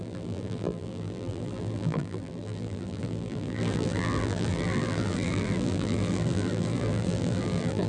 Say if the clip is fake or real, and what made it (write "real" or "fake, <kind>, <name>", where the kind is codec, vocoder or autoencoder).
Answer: fake, vocoder, BigVGAN v2